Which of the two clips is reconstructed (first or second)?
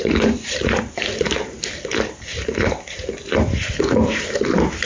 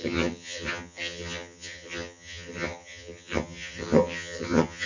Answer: second